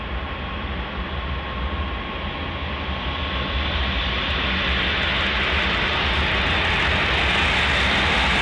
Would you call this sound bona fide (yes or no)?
yes